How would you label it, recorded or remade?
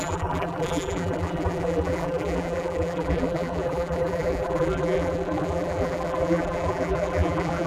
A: remade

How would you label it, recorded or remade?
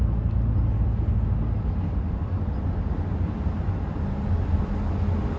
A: recorded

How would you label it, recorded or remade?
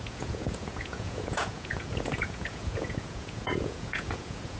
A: remade